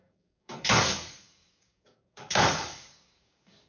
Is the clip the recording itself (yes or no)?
no